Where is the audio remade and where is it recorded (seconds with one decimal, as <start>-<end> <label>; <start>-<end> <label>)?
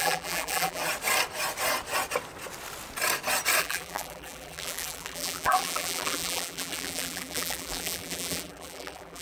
0.0-0.8 remade; 0.8-3.6 recorded; 3.6-9.2 remade